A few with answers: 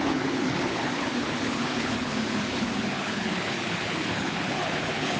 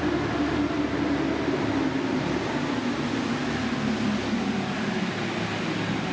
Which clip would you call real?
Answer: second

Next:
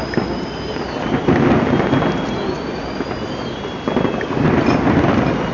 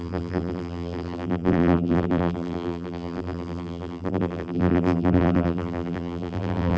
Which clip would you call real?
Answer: first